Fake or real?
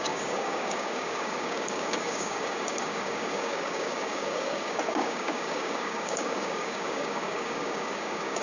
fake